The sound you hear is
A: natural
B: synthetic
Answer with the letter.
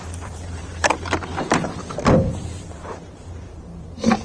B